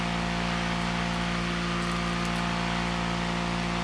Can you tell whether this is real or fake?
real